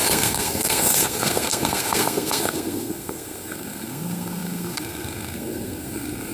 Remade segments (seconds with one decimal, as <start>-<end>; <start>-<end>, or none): 0.0-6.3